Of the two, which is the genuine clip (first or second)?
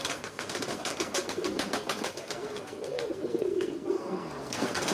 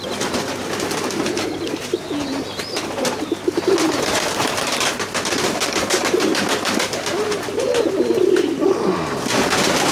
second